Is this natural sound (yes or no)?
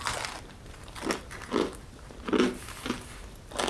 yes